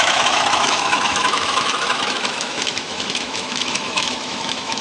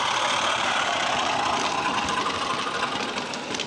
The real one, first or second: second